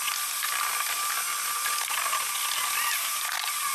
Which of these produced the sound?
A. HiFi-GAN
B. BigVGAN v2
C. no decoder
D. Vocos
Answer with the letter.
C